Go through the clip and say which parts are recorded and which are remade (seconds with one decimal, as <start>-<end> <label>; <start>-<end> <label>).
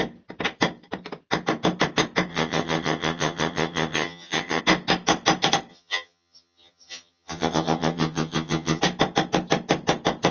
0.0-2.3 recorded; 2.3-4.6 remade; 4.6-5.7 recorded; 5.7-8.8 remade; 8.8-10.3 recorded